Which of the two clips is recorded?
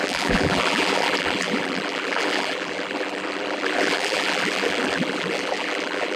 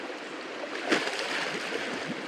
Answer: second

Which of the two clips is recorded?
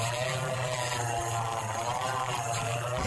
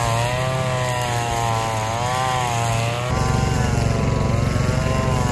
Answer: second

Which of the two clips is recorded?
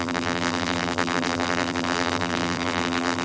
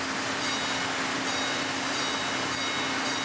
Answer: second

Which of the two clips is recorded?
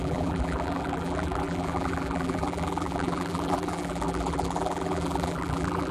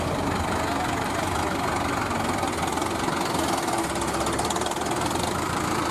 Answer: second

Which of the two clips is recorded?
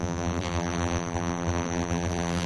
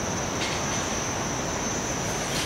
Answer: second